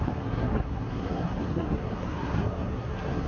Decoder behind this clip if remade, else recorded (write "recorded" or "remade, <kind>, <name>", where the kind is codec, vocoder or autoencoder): remade, codec, SNAC